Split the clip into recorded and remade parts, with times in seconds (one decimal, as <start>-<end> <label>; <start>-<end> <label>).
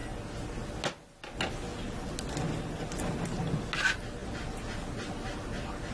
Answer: 0.0-5.9 recorded